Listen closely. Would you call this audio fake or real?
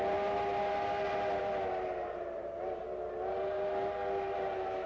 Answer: real